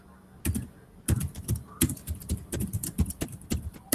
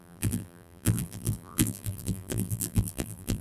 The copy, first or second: second